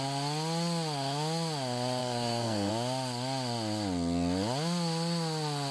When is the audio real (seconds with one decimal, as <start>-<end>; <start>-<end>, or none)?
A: 0.0-2.0; 2.7-5.7